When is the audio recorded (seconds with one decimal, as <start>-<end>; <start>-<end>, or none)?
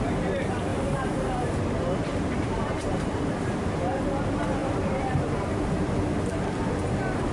0.0-0.7; 1.5-2.1; 3.1-4.6; 5.9-7.3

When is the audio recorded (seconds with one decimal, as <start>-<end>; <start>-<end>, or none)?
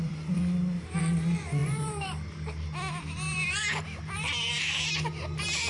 0.4-1.0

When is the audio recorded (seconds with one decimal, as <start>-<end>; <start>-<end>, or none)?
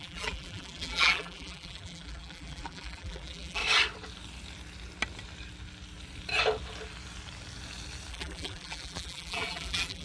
3.6-8.1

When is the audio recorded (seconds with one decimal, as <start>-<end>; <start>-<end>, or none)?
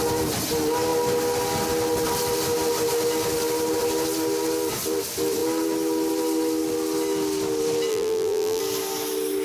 0.0-7.9; 8.6-9.4